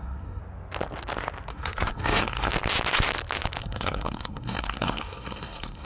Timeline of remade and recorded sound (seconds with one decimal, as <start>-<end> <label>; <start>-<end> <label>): 0.0-0.4 remade; 0.4-1.5 recorded; 1.5-2.5 remade; 2.5-3.6 recorded; 3.6-5.8 remade